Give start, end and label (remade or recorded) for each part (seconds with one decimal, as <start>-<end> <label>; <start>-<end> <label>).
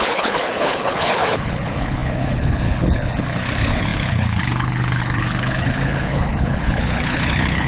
0.0-7.7 remade